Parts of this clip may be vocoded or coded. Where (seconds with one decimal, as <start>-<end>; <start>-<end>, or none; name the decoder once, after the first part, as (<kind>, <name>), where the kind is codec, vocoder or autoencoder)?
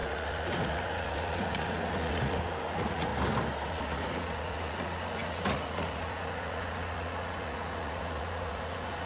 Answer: 0.0-3.1 (vocoder, Vocos); 3.7-9.1